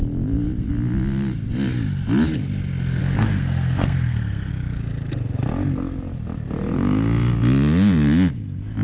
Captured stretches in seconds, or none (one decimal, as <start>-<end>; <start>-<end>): 0.0-3.0; 4.5-8.8